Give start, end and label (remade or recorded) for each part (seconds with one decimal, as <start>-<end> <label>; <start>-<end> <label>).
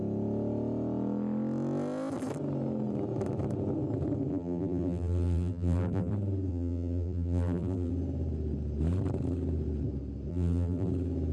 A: 0.0-4.3 recorded; 4.3-6.1 remade; 6.1-6.5 recorded; 6.5-7.9 remade; 7.9-10.3 recorded; 10.3-10.9 remade; 10.9-11.3 recorded